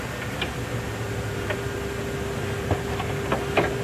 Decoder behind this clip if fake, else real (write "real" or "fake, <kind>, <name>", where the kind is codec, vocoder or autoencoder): real